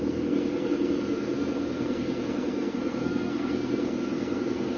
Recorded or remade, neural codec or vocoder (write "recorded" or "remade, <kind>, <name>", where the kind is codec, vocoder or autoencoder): remade, codec, SNAC